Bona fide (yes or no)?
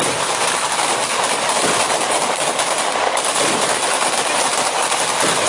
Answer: yes